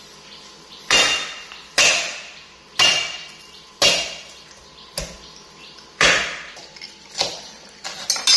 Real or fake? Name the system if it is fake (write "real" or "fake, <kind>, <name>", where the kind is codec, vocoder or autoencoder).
real